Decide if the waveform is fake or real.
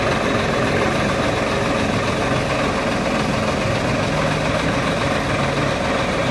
real